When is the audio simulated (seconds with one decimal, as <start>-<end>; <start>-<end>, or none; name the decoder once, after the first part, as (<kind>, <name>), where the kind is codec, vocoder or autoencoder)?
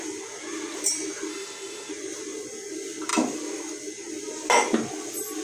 1.3-1.9 (autoencoder, DAC-VAE)